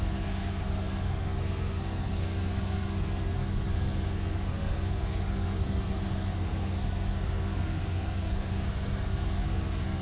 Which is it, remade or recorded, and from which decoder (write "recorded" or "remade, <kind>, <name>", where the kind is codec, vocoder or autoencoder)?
remade, codec, SNAC